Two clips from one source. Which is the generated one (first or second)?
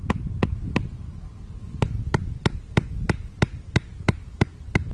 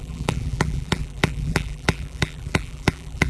second